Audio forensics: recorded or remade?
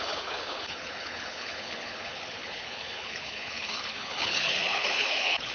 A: remade